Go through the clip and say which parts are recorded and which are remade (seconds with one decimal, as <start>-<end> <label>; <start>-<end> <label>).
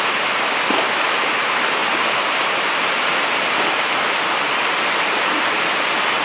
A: 0.0-1.8 recorded; 1.8-2.5 remade; 2.5-6.2 recorded